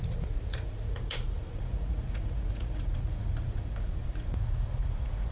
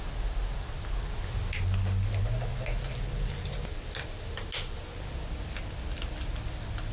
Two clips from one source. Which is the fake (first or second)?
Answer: first